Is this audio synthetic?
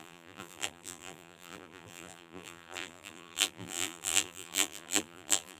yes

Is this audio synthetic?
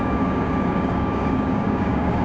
yes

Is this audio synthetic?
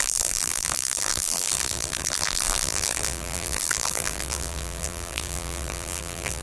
yes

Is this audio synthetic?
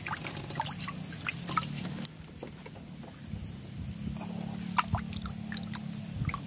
no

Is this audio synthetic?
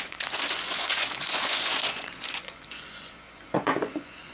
yes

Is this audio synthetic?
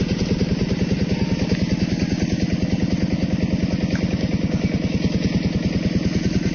no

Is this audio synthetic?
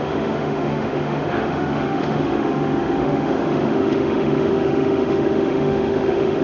yes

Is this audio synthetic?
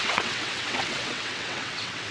yes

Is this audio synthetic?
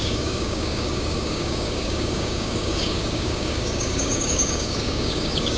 yes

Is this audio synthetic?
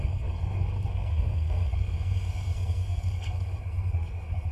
yes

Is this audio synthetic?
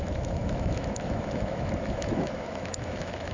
yes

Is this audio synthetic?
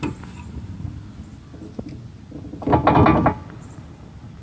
no